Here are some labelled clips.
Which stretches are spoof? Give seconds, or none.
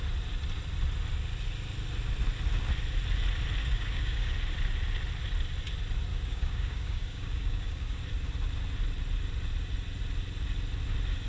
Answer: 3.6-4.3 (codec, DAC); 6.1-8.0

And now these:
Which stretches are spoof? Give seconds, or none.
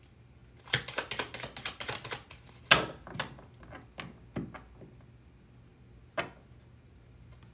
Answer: none